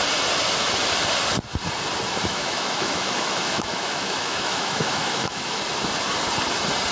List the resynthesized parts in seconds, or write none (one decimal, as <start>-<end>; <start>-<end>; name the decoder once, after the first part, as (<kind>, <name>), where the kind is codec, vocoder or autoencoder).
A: 2.3-5.6 (autoencoder, DAC-VAE)